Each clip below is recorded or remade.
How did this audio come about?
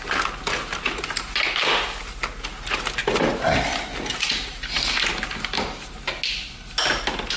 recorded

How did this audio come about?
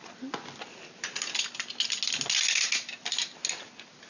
recorded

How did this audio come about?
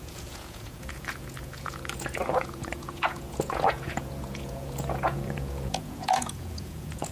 remade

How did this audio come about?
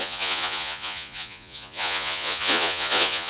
remade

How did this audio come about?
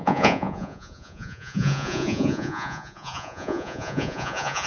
remade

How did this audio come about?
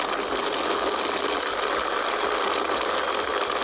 recorded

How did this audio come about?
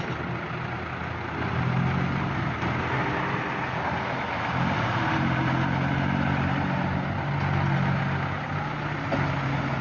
recorded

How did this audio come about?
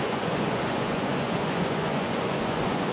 remade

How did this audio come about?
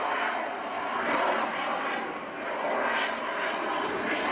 recorded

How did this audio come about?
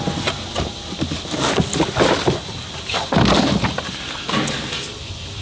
recorded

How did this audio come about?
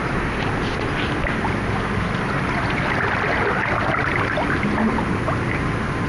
recorded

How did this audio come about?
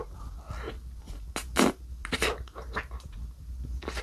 recorded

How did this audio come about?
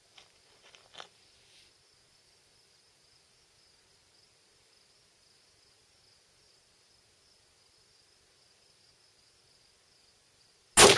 recorded